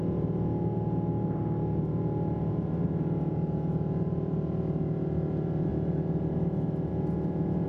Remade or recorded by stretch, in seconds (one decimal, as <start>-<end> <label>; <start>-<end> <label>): 0.0-7.7 recorded